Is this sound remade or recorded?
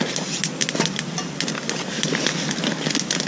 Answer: recorded